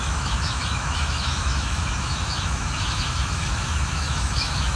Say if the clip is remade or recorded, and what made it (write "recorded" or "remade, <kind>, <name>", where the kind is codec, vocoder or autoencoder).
remade, autoencoder, DAC-VAE